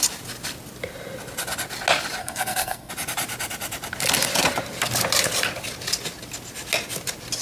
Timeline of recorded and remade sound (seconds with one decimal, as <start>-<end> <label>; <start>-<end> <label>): 0.0-2.2 recorded; 2.2-2.9 remade; 2.9-7.4 recorded